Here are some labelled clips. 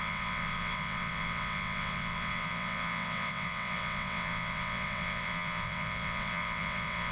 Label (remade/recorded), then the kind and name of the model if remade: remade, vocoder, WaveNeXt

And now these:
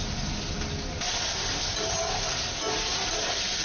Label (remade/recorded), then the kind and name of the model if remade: recorded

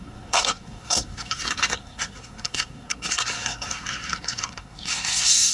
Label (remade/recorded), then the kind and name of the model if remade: remade, codec, SNAC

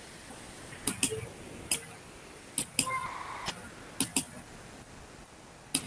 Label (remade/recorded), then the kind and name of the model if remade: recorded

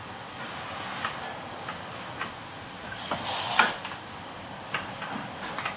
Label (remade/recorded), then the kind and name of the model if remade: recorded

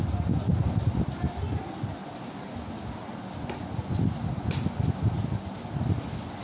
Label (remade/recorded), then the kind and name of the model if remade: recorded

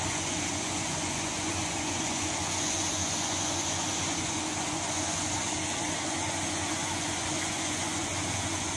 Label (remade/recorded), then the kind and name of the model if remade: remade, vocoder, Vocos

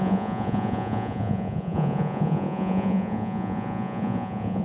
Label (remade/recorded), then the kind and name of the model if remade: remade, vocoder, Vocos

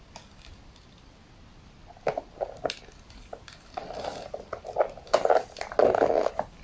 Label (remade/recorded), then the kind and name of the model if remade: recorded